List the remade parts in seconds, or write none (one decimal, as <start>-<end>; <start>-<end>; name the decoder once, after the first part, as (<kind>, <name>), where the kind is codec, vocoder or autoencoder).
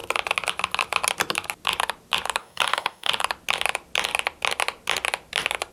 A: 2.4-3.1 (codec, DAC)